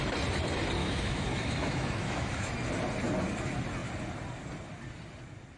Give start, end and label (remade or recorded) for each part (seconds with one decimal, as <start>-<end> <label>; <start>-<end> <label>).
0.0-0.8 recorded; 0.8-2.5 remade; 2.5-5.6 recorded